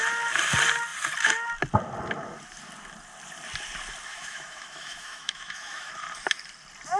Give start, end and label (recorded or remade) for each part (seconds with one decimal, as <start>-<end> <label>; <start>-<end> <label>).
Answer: 0.0-4.1 recorded; 4.1-5.9 remade; 5.9-7.0 recorded